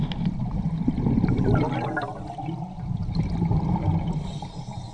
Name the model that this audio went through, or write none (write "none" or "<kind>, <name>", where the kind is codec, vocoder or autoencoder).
none